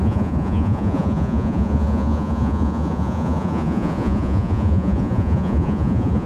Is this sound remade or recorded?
remade